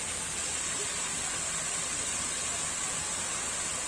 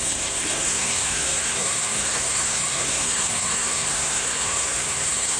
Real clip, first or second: first